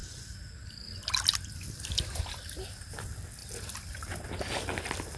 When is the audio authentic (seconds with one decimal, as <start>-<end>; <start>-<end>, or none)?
0.0-5.2